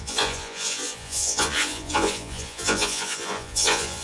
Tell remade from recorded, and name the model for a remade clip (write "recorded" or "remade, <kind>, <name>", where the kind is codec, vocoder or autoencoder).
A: remade, vocoder, Vocos